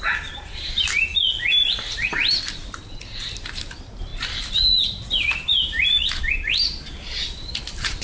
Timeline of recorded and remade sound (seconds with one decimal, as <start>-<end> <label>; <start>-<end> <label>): 0.0-8.0 recorded